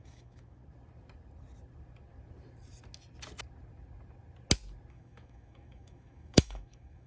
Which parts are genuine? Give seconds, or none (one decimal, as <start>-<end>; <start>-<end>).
0.6-4.9